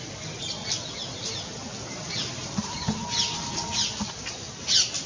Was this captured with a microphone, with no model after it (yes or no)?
yes